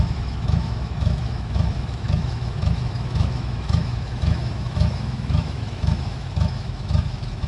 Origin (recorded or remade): remade